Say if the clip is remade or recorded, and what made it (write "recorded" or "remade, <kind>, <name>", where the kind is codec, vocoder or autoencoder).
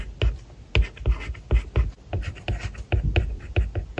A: recorded